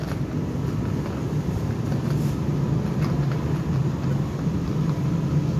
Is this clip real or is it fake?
real